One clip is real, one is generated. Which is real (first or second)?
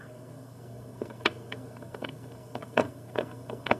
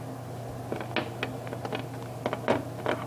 second